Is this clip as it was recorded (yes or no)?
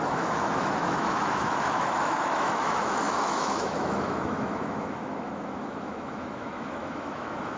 no